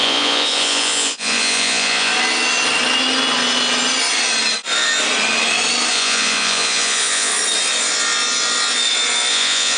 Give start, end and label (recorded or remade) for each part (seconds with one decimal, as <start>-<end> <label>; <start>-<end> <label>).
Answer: 0.0-2.1 remade; 2.1-5.9 recorded; 5.9-7.3 remade; 7.3-9.3 recorded; 9.3-9.8 remade